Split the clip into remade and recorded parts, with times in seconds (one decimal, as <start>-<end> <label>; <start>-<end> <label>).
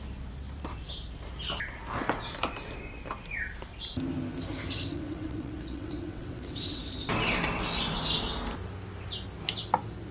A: 0.0-4.9 recorded; 4.9-6.8 remade; 6.8-10.1 recorded